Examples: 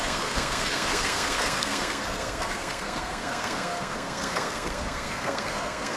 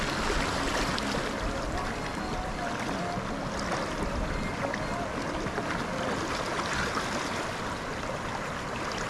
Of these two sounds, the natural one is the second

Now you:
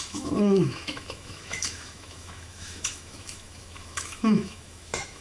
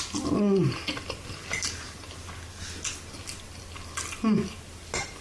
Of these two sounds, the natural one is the second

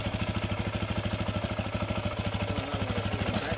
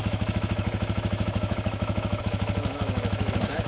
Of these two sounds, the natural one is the first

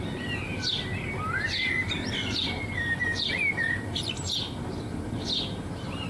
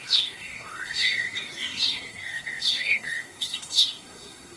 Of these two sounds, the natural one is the first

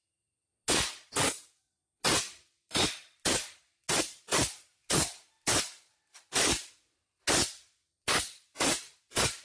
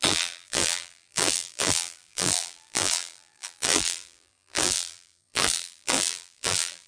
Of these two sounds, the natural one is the first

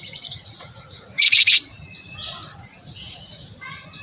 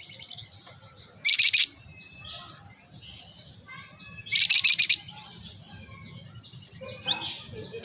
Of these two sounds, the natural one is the second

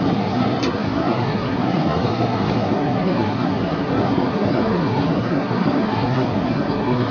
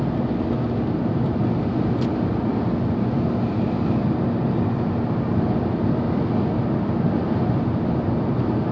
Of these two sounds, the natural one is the second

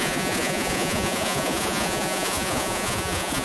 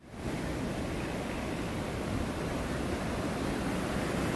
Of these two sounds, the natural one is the second